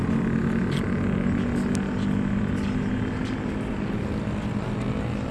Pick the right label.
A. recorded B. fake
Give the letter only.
A